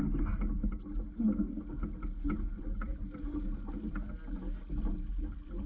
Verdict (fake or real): real